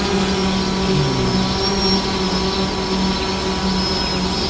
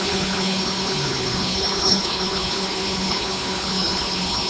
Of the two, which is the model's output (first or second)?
second